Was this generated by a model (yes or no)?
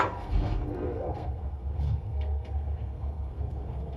yes